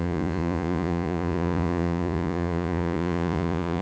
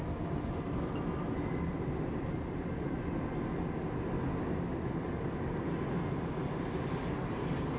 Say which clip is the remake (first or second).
first